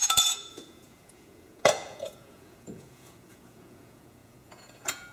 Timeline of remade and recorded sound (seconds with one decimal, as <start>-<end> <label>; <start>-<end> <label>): 0.0-5.1 remade